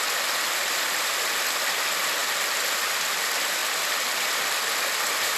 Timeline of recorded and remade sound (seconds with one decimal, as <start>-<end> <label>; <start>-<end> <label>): 0.0-5.4 recorded